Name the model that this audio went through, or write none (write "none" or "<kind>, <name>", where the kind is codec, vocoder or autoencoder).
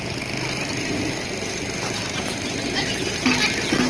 none